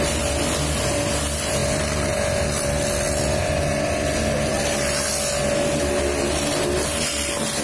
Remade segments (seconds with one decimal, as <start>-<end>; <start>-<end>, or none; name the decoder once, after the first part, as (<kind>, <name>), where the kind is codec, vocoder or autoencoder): none